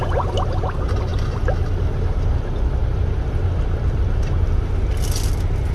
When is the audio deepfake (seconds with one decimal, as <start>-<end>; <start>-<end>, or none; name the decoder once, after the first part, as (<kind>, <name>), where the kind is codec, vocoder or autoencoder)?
1.1-1.8 (vocoder, BigVGAN v2)